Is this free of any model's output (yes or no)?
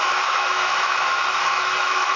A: no